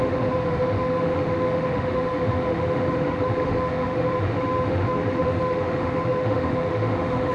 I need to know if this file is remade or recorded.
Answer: remade